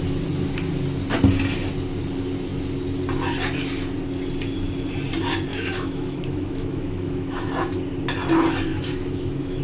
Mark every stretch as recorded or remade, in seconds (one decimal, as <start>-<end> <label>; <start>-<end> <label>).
0.0-5.5 recorded; 5.5-7.5 remade; 7.5-8.7 recorded; 8.7-9.6 remade